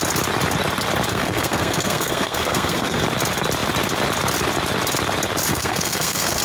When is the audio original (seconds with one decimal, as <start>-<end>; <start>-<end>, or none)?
0.0-1.1; 3.0-5.5